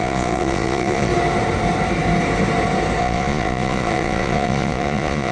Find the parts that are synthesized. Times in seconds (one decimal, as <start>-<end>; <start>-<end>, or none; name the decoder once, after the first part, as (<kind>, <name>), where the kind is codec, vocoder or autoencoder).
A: 0.0-1.1 (vocoder, Vocos); 3.0-5.3